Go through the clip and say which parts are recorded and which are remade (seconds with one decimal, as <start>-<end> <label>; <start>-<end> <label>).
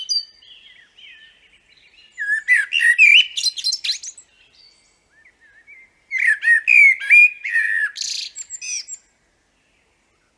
0.0-10.4 recorded